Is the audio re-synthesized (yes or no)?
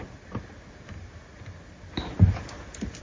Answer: no